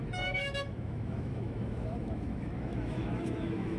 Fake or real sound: fake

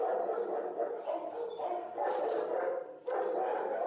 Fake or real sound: real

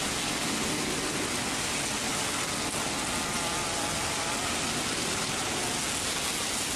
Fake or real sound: real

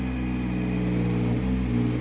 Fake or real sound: real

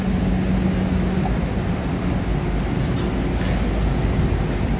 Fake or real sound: real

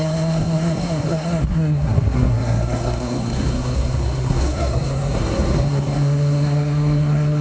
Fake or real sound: fake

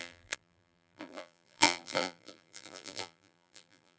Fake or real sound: fake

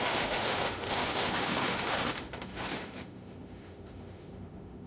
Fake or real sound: fake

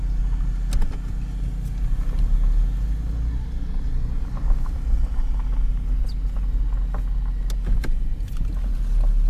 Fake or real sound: real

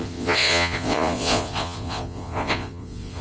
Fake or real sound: fake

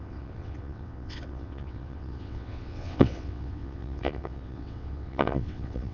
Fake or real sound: fake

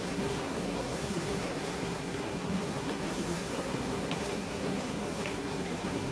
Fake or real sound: fake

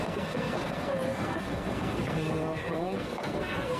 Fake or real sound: fake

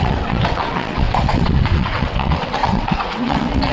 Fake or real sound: fake